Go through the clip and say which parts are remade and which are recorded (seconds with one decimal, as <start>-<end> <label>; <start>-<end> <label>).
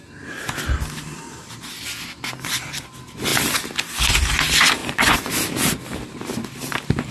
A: 0.0-4.8 recorded; 4.8-5.3 remade; 5.3-7.1 recorded